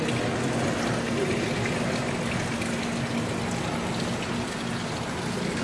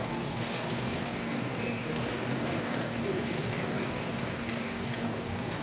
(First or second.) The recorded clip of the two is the first